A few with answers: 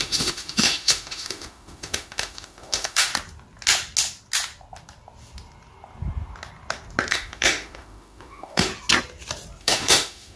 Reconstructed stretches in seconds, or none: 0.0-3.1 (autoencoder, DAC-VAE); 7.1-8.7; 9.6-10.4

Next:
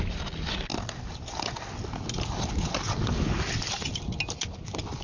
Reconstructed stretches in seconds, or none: none

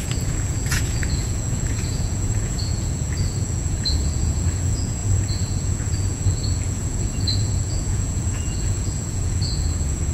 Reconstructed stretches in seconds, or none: 0.0-10.1 (vocoder, Vocos)

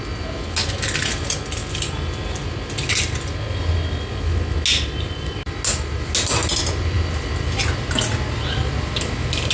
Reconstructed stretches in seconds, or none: none

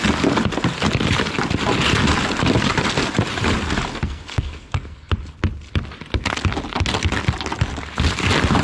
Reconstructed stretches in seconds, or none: 3.9-5.1 (codec, SNAC)

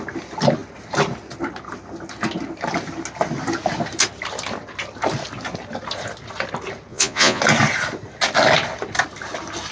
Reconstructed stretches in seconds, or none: 6.9-7.4 (vocoder, Vocos)